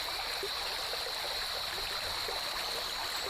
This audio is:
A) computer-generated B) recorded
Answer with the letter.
B